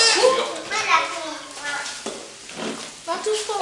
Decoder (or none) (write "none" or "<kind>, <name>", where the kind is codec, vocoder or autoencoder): none